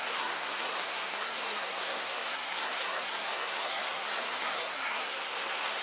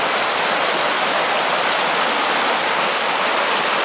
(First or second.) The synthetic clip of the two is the first